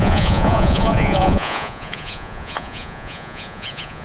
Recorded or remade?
remade